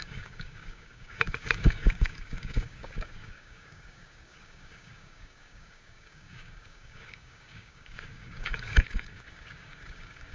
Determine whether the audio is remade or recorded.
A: remade